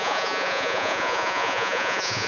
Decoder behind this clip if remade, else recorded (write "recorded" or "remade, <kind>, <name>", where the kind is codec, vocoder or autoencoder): remade, vocoder, Vocos